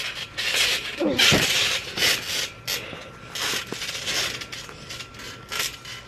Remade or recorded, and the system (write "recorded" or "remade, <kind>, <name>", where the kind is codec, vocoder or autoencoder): recorded